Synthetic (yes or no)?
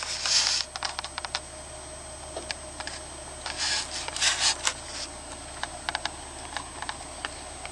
no